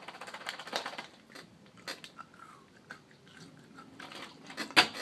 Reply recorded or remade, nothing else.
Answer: recorded